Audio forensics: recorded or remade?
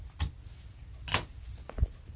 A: recorded